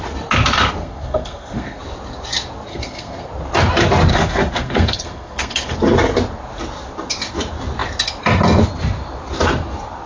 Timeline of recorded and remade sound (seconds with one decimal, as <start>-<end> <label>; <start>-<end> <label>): 0.0-0.8 recorded; 0.8-1.8 remade; 1.8-2.7 recorded; 2.7-3.3 remade; 3.3-4.1 recorded; 4.1-5.7 remade; 5.7-10.1 recorded